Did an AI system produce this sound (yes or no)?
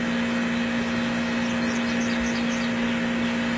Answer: no